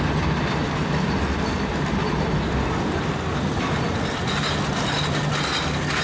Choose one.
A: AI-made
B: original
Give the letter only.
B